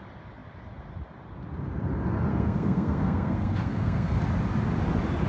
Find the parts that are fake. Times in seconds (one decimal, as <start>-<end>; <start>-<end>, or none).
2.3-4.2